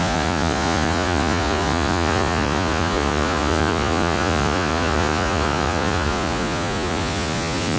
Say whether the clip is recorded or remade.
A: remade